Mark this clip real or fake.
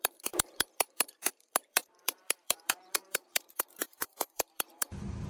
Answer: fake